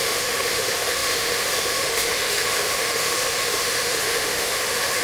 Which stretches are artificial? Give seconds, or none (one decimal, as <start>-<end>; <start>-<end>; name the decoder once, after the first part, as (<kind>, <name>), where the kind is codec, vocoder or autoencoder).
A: 0.0-5.0 (autoencoder, DAC-VAE)